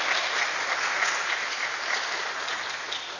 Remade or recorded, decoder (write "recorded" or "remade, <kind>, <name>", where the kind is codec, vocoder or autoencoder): recorded